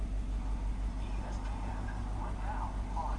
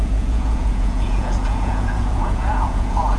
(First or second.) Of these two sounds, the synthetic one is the second